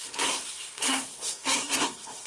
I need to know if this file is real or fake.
fake